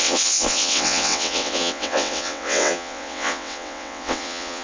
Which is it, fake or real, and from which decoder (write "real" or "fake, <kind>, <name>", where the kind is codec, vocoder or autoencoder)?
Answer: fake, vocoder, WaveNeXt